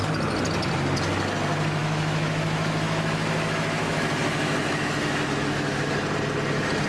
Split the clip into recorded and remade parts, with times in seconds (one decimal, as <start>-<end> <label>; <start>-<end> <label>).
0.0-1.8 recorded; 1.8-5.9 remade; 5.9-6.9 recorded